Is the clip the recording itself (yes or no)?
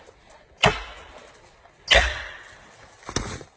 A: yes